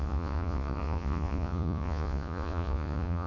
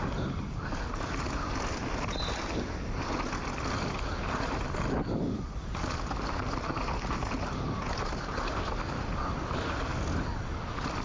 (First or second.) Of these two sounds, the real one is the second